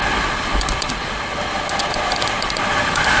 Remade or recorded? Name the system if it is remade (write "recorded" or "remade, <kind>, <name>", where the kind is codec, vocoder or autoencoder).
recorded